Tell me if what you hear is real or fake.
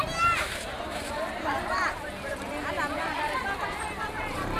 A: fake